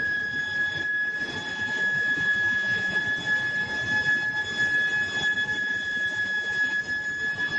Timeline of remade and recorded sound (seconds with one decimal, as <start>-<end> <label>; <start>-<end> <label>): 0.0-1.5 recorded; 1.5-3.0 remade; 3.0-5.6 recorded; 5.6-6.8 remade; 6.8-7.6 recorded